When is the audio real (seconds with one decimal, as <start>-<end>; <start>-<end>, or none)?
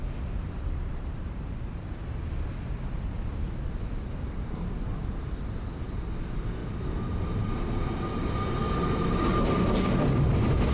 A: 0.0-6.6; 7.5-10.7